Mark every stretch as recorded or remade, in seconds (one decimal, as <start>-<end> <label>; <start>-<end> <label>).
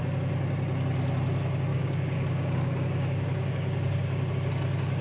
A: 0.0-1.7 recorded; 1.7-4.3 remade; 4.3-5.0 recorded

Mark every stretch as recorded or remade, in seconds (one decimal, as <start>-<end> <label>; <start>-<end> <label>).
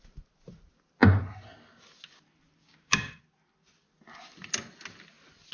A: 0.0-2.6 recorded; 2.6-3.2 remade; 3.2-5.5 recorded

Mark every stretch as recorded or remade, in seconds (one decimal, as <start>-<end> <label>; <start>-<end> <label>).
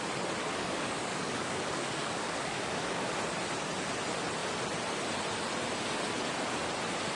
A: 0.0-0.5 recorded; 0.5-3.1 remade; 3.1-7.2 recorded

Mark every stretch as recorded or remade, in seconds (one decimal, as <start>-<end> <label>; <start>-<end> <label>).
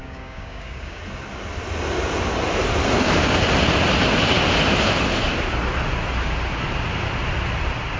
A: 0.0-1.0 remade; 1.0-8.0 recorded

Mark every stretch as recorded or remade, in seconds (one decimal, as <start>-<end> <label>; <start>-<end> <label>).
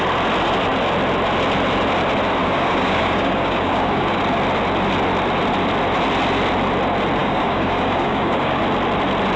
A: 0.0-2.4 recorded; 2.4-4.2 remade; 4.2-7.2 recorded; 7.2-8.6 remade; 8.6-9.4 recorded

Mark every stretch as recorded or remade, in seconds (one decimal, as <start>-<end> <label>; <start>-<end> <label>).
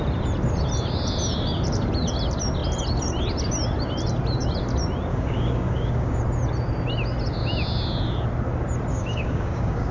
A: 0.0-5.1 recorded; 5.1-6.2 remade; 6.2-8.9 recorded; 8.9-9.9 remade